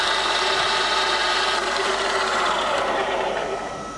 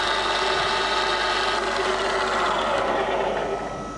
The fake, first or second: first